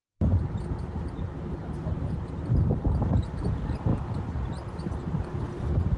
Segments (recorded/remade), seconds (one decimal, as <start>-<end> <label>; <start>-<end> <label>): 0.0-1.6 recorded; 1.6-2.8 remade; 2.8-6.0 recorded